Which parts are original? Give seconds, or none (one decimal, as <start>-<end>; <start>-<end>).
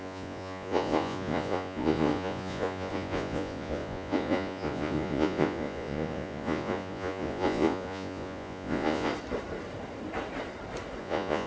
9.1-11.0